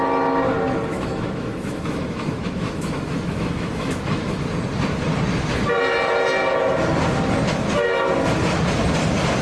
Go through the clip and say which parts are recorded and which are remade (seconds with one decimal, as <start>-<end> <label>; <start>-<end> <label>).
0.0-0.9 recorded; 0.9-4.4 remade; 4.4-9.4 recorded